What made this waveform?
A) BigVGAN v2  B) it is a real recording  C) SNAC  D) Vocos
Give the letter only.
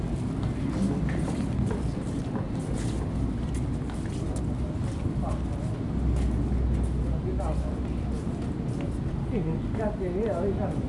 B